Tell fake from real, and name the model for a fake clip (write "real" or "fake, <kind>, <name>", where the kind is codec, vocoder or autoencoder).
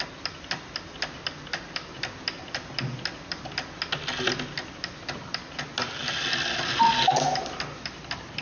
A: real